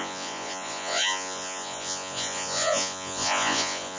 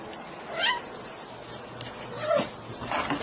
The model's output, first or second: first